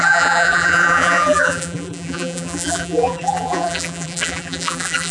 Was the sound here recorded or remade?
remade